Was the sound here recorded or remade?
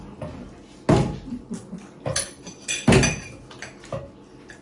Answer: recorded